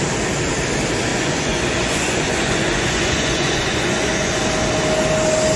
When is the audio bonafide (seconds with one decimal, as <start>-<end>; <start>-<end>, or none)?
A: 0.0-1.1; 4.4-5.6